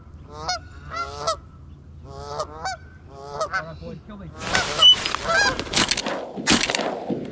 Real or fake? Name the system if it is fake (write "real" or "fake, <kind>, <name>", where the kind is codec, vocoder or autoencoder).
real